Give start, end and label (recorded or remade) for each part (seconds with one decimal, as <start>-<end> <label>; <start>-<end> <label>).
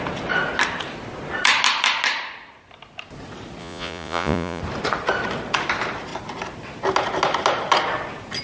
0.0-3.6 recorded; 3.6-4.6 remade; 4.6-8.4 recorded